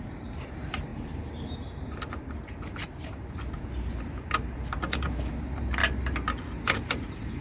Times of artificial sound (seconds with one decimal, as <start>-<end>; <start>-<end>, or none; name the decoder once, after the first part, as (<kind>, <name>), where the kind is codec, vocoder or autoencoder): 0.0-5.8 (vocoder, BigVGAN v2); 6.9-7.4